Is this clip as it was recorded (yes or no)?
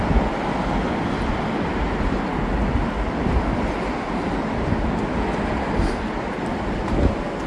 yes